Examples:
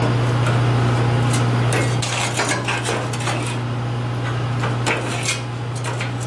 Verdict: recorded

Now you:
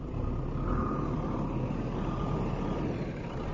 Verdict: recorded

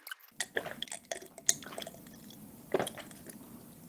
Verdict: recorded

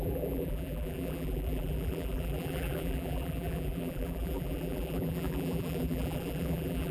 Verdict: remade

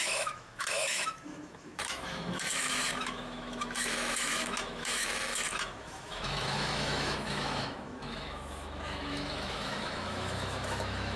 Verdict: remade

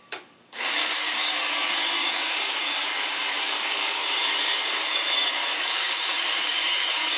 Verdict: remade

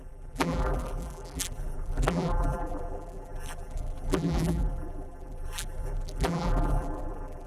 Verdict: remade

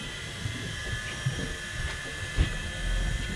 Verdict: recorded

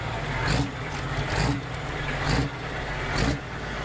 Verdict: recorded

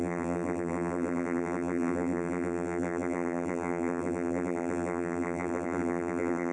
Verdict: remade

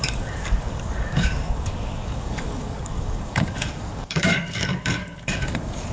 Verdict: remade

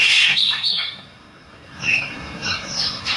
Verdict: remade